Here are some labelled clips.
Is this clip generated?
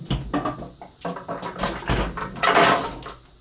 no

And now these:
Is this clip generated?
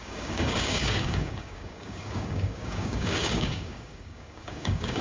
yes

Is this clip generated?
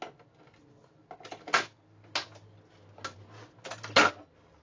no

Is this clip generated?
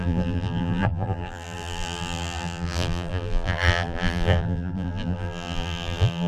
yes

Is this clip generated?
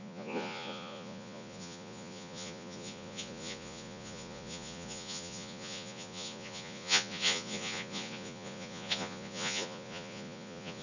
yes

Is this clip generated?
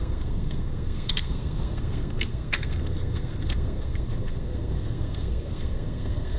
yes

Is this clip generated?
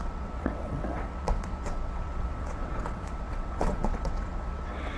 yes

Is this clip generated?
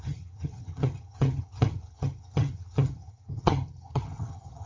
yes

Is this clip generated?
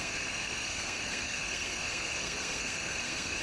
yes